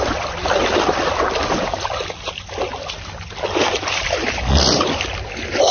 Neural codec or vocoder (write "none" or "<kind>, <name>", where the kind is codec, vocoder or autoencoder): none